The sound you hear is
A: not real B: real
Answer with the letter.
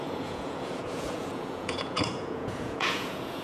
A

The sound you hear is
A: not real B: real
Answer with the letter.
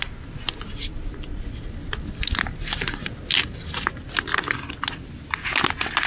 B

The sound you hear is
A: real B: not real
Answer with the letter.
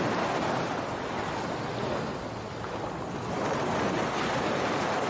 A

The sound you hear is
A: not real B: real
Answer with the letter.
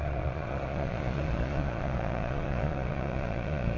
A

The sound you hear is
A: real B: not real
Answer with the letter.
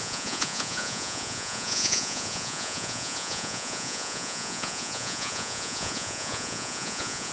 B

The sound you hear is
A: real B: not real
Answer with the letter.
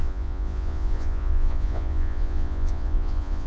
B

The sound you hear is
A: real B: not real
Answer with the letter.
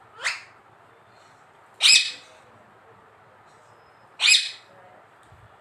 A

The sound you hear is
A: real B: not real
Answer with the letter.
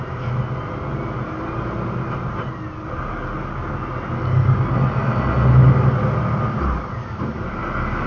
A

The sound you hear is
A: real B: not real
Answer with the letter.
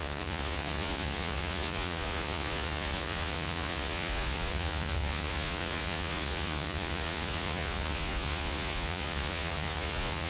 B